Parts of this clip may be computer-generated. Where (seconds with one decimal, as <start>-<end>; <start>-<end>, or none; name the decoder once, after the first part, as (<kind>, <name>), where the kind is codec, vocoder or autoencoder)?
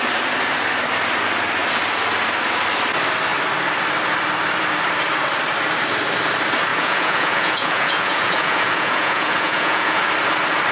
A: 6.7-10.1 (vocoder, Vocos)